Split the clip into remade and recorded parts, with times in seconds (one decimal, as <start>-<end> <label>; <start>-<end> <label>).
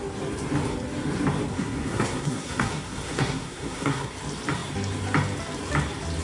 0.0-1.5 recorded; 1.5-4.1 remade; 4.1-6.2 recorded